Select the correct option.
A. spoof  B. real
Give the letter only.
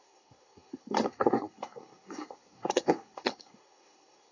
A